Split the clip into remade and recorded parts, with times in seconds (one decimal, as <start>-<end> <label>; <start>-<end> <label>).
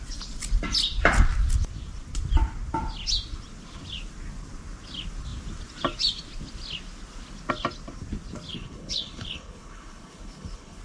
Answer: 0.0-8.5 recorded; 8.5-10.8 remade